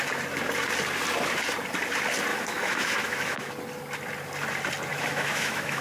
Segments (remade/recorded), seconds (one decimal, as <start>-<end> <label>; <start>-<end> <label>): 0.0-2.3 recorded; 2.3-3.5 remade; 3.5-4.9 recorded; 4.9-5.8 remade